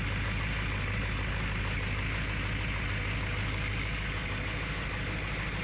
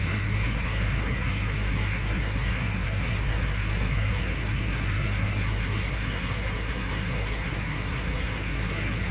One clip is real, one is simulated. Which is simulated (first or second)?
second